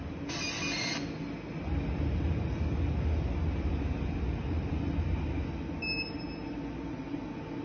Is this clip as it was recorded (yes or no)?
yes